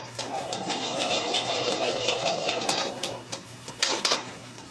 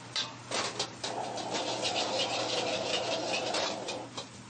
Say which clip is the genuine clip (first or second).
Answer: second